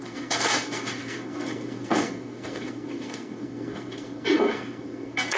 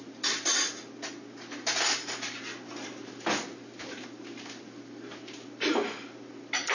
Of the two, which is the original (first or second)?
second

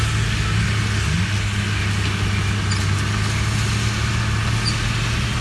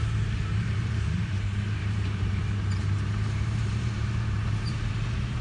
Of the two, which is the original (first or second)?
first